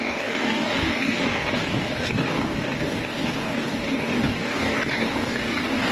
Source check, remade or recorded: remade